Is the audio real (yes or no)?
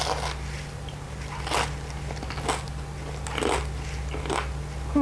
yes